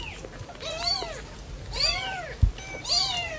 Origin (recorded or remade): remade